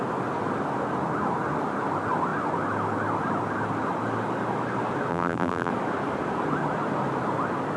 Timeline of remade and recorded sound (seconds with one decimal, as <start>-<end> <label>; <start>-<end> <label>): 0.0-5.1 recorded; 5.1-5.7 remade; 5.7-7.8 recorded